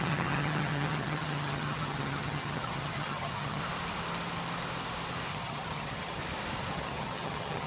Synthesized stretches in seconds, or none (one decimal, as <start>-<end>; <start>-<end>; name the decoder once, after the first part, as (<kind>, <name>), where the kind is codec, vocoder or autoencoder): 0.0-3.6 (vocoder, HiFi-GAN); 5.3-6.2; 6.7-7.7